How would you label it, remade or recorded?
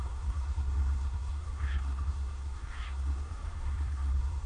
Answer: remade